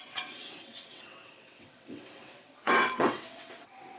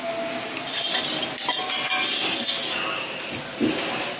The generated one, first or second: first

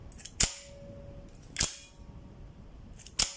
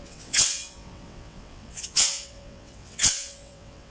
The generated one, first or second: second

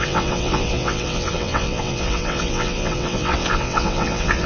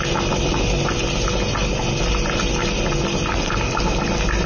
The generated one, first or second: first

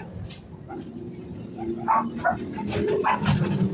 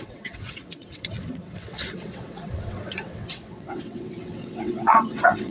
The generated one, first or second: second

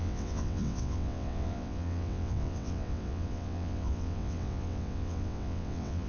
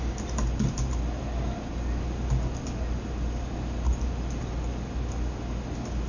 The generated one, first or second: first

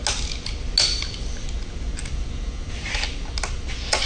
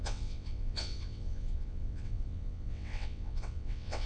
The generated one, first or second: second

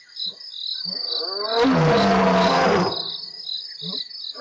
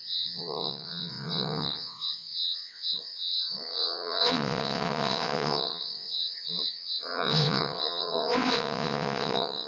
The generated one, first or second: second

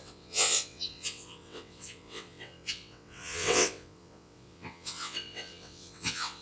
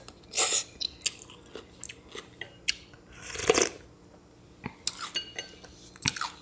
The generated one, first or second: first